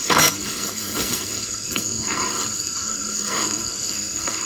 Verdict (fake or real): fake